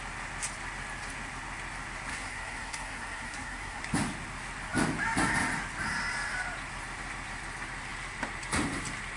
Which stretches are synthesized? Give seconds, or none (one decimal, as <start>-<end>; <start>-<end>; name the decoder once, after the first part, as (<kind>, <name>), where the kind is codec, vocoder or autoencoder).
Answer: 2.1-3.8 (codec, SNAC)